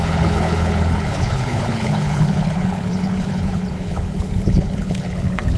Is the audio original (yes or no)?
no